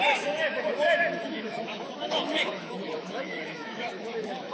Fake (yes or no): yes